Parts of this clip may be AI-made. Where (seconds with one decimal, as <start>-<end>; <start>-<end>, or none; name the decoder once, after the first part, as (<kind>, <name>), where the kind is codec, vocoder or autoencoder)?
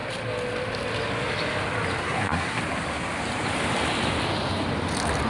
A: 2.0-2.6 (codec, SNAC)